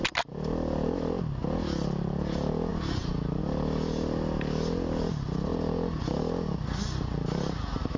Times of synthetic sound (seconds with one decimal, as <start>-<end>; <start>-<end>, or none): none